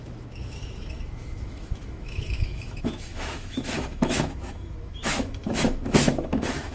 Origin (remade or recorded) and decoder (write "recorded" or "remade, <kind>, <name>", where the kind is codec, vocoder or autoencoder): remade, autoencoder, DAC-VAE